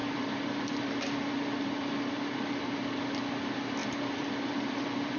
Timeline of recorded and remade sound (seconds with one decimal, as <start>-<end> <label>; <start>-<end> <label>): 0.0-2.6 remade; 2.6-3.8 recorded; 3.8-5.2 remade